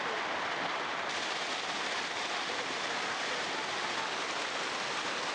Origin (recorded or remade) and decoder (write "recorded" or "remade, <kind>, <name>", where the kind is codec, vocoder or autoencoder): recorded